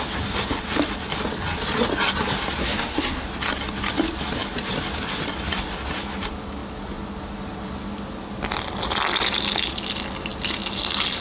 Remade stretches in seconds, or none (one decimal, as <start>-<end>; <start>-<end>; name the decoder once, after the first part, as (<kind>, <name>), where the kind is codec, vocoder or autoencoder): 2.6-3.2 (codec, SNAC)